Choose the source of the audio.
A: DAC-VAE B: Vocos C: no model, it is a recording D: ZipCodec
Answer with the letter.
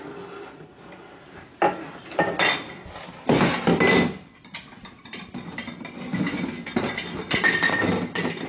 C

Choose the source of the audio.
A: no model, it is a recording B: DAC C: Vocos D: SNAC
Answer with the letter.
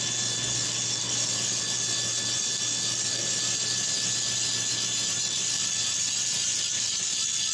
A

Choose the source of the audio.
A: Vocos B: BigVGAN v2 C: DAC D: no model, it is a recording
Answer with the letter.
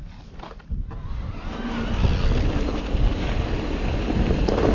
D